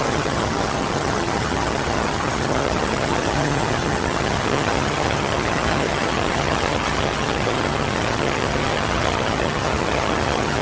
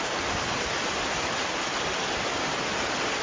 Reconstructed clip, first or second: first